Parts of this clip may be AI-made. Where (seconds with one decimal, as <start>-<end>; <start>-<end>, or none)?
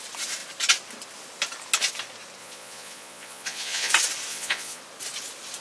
2.4-3.9; 4.3-4.8